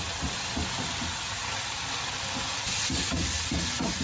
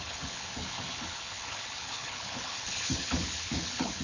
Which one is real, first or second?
first